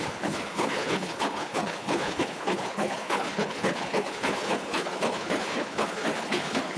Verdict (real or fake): fake